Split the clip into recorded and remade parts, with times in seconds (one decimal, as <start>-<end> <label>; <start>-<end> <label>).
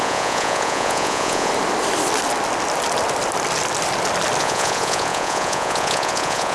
0.0-1.5 remade; 1.5-4.4 recorded; 4.4-6.5 remade